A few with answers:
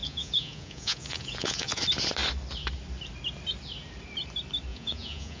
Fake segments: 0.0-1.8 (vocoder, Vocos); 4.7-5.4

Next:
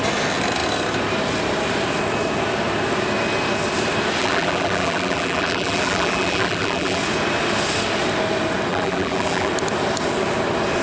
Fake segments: 4.2-7.0 (vocoder, BigVGAN v2); 8.7-9.5

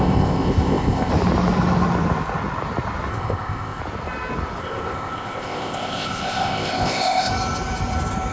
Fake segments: 0.0-1.1 (codec, ZipCodec); 3.1-3.8; 4.6-7.3

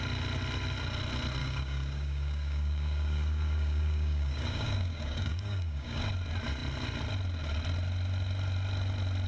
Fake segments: 1.4-6.0 (codec, DAC)

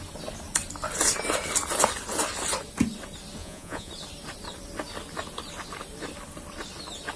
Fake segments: 3.4-3.9 (vocoder, Vocos)

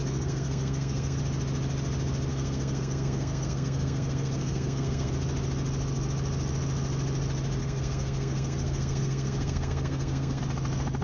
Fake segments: 0.0-1.2 (codec, SNAC); 2.3-5.1; 7.6-10.4

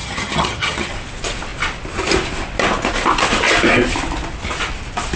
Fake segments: 0.0-0.9 (vocoder, HiFi-GAN)

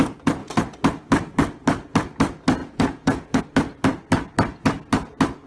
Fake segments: 2.6-3.4 (vocoder, Vocos)